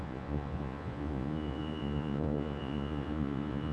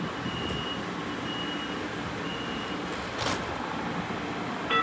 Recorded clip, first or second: second